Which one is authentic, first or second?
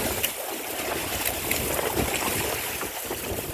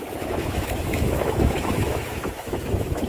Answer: first